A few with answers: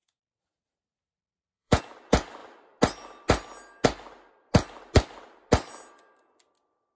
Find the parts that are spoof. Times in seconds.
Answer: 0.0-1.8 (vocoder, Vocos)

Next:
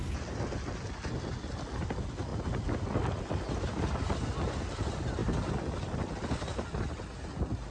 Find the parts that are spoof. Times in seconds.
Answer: none

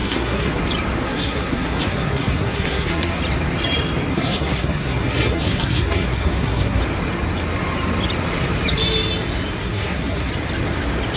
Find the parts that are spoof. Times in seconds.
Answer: 0.0-0.6 (codec, SNAC); 1.0-3.2; 4.1-6.8; 9.6-10.3

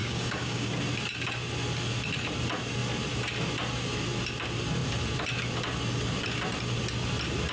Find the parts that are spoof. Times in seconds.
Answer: 0.0-0.7 (codec, DAC)

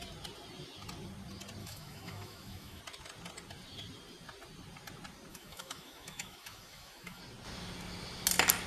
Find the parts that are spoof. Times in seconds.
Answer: 1.6-2.8 (autoencoder, DAC-VAE); 5.3-7.2

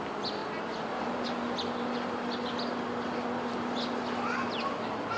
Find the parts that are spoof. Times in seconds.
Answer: 0.4-1.2 (vocoder, BigVGAN v2)